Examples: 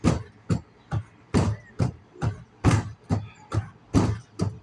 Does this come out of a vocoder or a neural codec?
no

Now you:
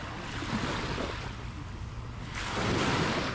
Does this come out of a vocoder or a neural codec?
no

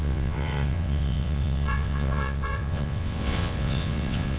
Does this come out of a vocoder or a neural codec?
yes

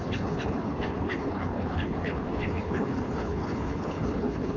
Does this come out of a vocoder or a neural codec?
yes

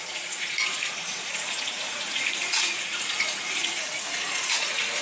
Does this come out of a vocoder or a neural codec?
yes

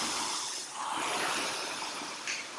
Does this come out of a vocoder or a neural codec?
yes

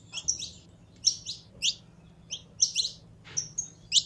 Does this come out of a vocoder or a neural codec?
no